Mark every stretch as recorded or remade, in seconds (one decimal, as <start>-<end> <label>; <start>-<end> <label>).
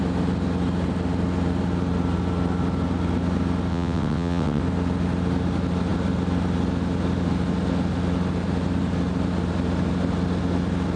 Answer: 0.0-3.7 recorded; 3.7-4.6 remade; 4.6-11.0 recorded